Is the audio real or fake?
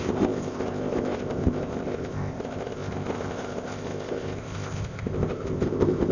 fake